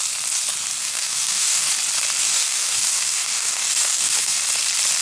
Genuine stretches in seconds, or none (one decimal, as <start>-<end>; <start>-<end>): 0.0-0.8; 1.7-2.2; 4.4-5.0